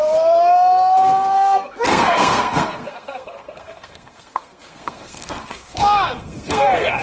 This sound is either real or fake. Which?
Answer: fake